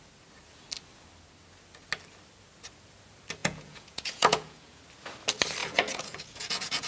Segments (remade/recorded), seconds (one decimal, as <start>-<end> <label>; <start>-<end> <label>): 0.0-3.4 recorded; 3.4-4.8 remade; 4.8-5.6 recorded; 5.6-6.9 remade

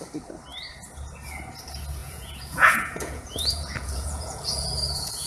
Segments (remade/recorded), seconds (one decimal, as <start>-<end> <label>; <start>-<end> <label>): 0.0-2.0 recorded; 2.0-5.3 remade

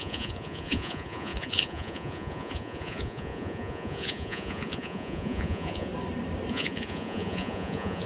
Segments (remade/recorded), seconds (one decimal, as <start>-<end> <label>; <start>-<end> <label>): 0.0-5.9 remade; 5.9-6.5 recorded; 6.5-8.1 remade

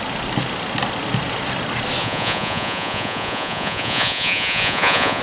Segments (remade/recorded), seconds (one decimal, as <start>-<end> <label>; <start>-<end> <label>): 0.0-2.0 recorded; 2.0-5.2 remade

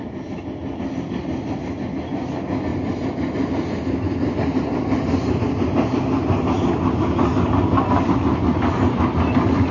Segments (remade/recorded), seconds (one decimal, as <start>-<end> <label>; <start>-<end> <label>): 0.0-9.7 recorded

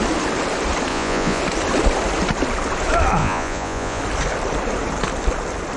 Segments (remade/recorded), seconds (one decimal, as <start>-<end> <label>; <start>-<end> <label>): 0.0-0.9 recorded; 0.9-1.4 remade; 1.4-3.2 recorded; 3.2-4.0 remade; 4.0-5.8 recorded

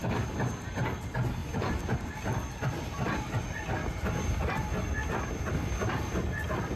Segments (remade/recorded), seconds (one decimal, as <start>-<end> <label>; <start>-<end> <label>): 0.0-6.8 recorded

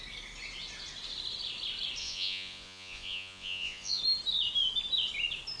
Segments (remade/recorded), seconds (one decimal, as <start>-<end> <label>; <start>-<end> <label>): 0.0-2.0 recorded; 2.0-4.0 remade; 4.0-5.6 recorded